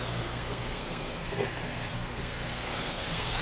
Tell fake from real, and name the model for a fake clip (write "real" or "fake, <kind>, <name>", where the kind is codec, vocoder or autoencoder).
fake, codec, SNAC